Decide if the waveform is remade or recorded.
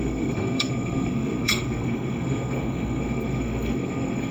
remade